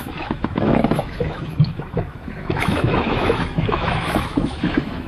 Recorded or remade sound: remade